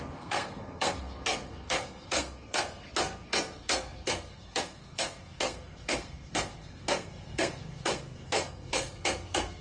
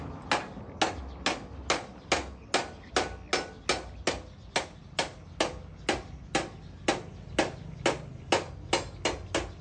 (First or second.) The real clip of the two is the second